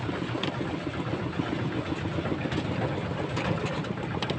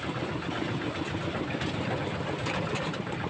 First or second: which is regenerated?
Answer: second